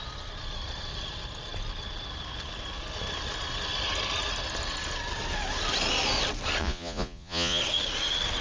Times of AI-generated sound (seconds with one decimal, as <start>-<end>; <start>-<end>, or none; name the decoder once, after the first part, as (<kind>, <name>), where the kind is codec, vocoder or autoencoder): 6.6-7.6 (vocoder, Vocos)